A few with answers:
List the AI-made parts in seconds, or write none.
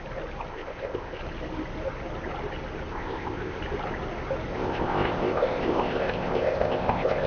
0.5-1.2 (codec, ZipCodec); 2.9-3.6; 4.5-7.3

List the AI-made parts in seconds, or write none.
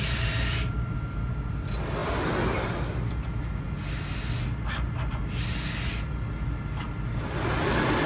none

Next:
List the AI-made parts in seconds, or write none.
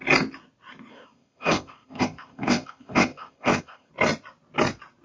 0.9-3.9 (codec, ZipCodec)